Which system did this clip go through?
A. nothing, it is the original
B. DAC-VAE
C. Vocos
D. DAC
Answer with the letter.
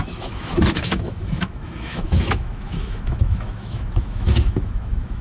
B